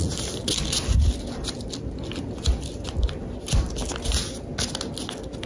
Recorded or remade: recorded